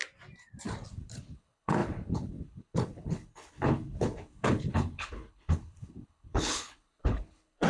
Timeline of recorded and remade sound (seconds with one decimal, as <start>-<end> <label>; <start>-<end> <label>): 0.0-0.9 recorded; 0.9-7.7 remade